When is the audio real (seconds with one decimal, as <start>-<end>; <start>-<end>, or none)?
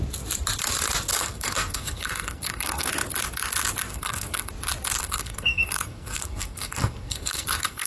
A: 0.0-1.1; 2.9-3.9; 4.5-5.0